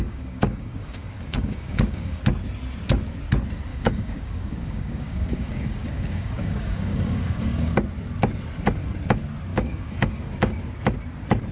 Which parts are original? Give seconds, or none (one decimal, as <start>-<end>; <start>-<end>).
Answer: 2.2-3.7; 7.7-9.5; 10.2-11.5